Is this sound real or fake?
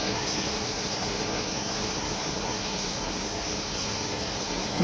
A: fake